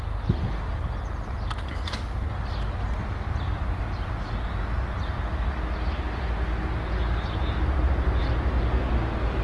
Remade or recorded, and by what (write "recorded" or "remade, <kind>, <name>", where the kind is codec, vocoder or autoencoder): recorded